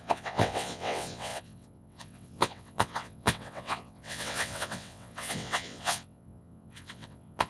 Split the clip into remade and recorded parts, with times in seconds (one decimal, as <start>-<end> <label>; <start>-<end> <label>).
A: 0.0-7.5 remade